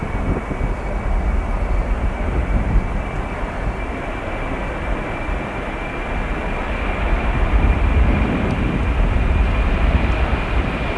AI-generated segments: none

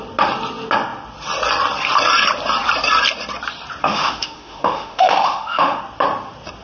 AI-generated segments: 3.8-5.8

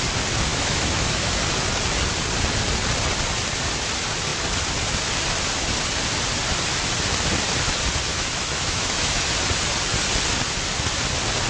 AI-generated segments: 0.5-1.3; 8.1-9.2

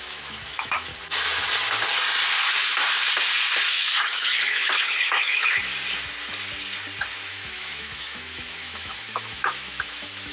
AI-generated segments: 0.0-0.9; 3.7-5.6; 7.3-10.3

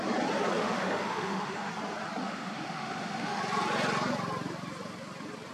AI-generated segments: 0.6-1.7; 2.2-3.4

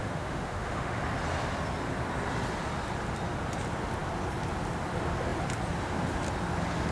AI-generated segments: 0.0-1.0